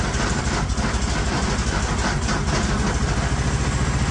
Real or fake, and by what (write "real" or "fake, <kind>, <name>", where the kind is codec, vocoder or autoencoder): real